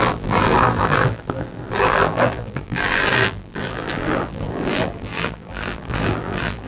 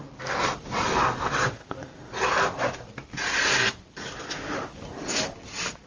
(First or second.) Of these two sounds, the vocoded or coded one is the first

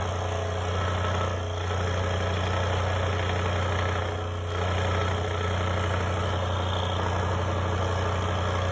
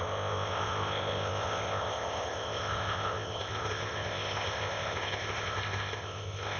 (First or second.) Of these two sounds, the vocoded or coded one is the second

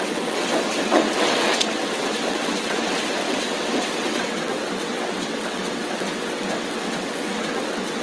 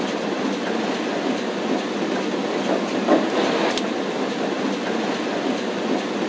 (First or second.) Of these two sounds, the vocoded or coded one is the first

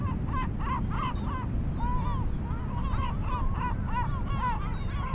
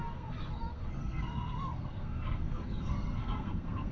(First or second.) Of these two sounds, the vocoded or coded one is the second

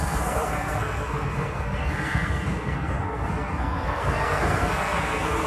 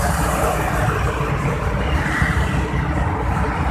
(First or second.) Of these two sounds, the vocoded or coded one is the first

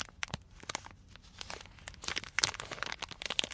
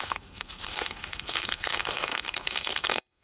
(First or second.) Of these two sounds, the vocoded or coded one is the second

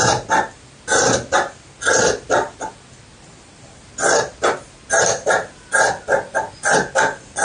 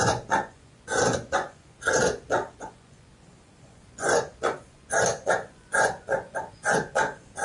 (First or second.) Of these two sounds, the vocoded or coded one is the second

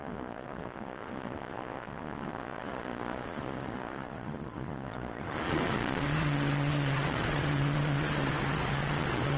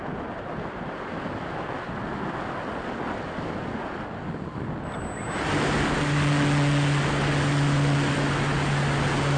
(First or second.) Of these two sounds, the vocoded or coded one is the first